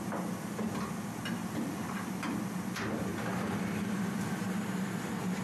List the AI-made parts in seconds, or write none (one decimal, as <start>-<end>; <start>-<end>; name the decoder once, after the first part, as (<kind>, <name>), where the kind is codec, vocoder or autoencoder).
1.4-2.3 (vocoder, BigVGAN v2)